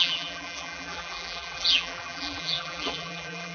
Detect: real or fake fake